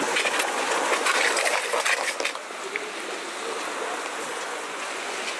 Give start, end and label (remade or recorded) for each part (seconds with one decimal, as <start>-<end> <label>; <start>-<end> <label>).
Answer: 0.0-1.1 remade; 1.1-4.3 recorded; 4.3-5.4 remade